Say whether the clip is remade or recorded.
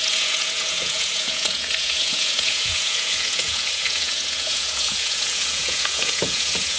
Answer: remade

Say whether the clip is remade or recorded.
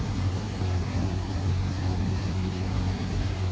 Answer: remade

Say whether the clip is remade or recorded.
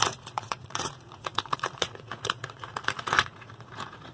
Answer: remade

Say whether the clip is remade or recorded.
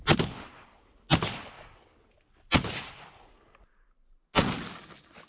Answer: recorded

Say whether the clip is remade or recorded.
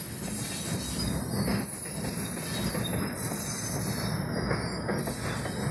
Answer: recorded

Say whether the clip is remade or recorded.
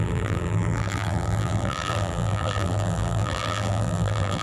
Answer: remade